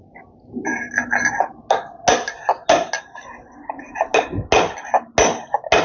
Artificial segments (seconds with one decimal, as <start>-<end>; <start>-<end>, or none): none